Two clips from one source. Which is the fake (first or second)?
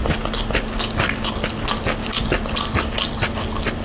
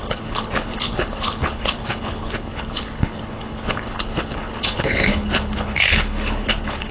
second